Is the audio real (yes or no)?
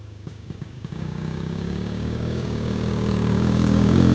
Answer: no